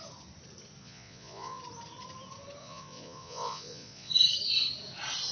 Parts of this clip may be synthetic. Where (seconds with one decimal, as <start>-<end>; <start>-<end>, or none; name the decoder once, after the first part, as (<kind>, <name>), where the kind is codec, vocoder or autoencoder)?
0.8-1.6 (vocoder, Vocos); 2.6-4.1